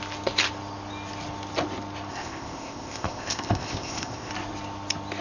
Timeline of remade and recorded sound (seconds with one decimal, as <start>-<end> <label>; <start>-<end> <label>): 0.0-2.1 recorded; 2.1-4.3 remade; 4.3-5.2 recorded